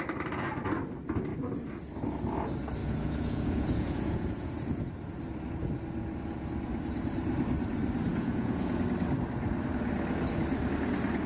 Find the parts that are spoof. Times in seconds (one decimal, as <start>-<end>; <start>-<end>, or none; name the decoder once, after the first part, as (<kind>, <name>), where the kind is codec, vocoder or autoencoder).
2.8-4.5 (vocoder, Vocos); 8.1-8.8